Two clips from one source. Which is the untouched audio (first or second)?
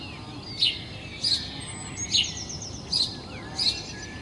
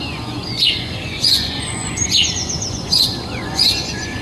first